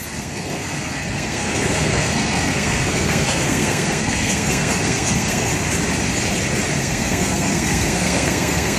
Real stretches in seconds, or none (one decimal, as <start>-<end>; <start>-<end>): 5.5-6.8